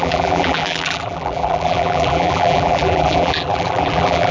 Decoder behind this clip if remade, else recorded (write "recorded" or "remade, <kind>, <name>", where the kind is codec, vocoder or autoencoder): remade, vocoder, BigVGAN v2